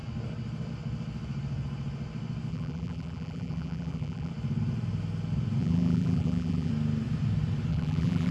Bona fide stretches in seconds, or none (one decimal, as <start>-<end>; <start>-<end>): 0.0-2.5; 4.3-5.6; 6.7-7.7